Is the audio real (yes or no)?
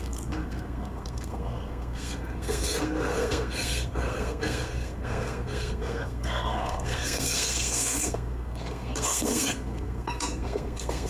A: no